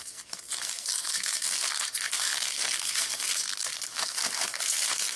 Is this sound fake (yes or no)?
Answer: yes